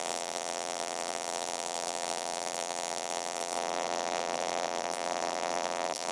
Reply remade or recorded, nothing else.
remade